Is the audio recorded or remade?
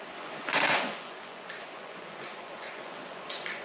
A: remade